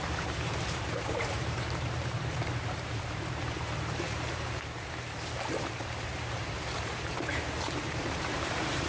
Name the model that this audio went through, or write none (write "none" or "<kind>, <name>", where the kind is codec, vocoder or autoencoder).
vocoder, BigVGAN v2